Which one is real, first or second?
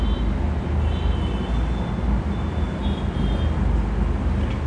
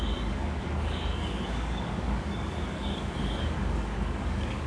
first